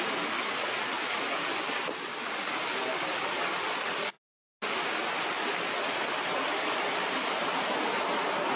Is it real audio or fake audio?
real